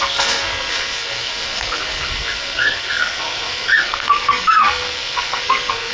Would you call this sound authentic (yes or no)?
no